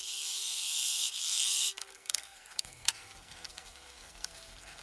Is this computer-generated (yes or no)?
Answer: yes